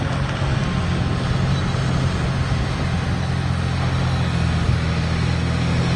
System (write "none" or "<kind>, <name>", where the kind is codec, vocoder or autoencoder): none